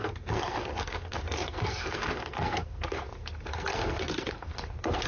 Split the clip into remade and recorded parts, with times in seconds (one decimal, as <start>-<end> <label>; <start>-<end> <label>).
0.0-5.1 remade